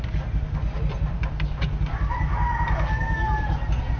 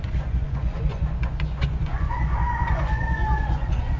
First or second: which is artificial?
second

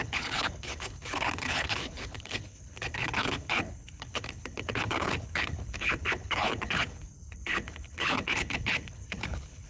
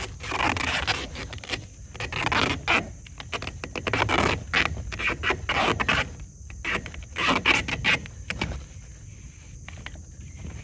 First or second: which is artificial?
first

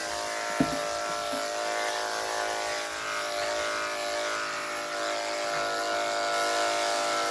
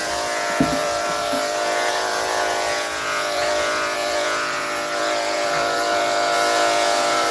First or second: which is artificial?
second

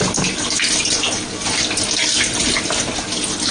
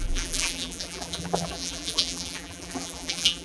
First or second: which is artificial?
second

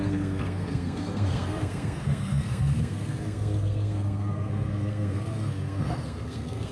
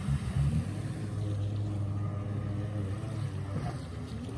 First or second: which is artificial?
first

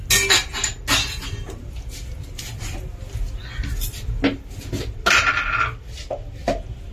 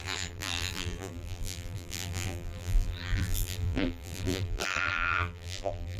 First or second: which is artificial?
second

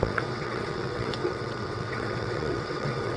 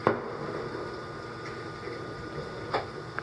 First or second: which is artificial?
first